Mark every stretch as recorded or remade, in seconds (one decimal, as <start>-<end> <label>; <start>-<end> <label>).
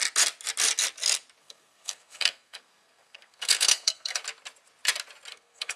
0.0-1.4 recorded; 1.4-4.2 remade; 4.2-5.3 recorded; 5.3-5.8 remade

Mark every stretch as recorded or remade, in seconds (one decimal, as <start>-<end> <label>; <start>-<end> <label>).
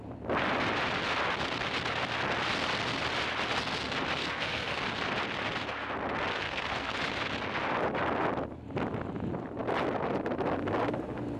0.0-4.2 recorded; 4.2-4.8 remade; 4.8-6.3 recorded; 6.3-7.0 remade; 7.0-11.4 recorded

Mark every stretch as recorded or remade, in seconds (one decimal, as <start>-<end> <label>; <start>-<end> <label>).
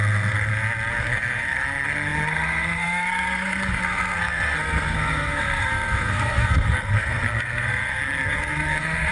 0.0-0.5 remade; 0.5-1.0 recorded; 1.0-9.1 remade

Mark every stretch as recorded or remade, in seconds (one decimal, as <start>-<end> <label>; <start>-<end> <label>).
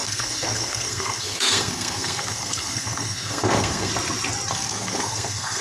0.0-3.9 remade; 3.9-4.5 recorded; 4.5-5.6 remade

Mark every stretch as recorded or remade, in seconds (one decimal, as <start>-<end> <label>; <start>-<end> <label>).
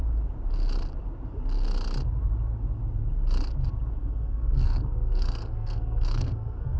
0.0-4.0 recorded; 4.0-6.8 remade